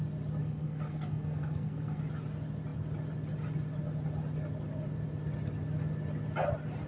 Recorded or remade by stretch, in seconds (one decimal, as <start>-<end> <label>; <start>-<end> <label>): 0.0-0.4 recorded; 0.4-2.0 remade; 2.0-6.9 recorded